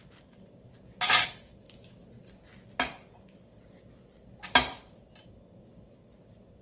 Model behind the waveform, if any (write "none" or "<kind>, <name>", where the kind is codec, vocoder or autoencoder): none